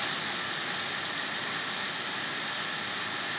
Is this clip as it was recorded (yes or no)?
yes